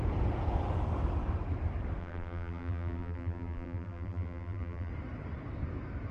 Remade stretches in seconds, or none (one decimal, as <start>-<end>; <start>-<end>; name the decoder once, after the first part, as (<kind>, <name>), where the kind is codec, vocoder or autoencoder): 2.0-4.9 (vocoder, BigVGAN v2)